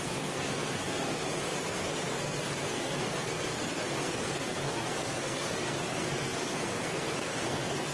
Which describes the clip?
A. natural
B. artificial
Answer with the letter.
B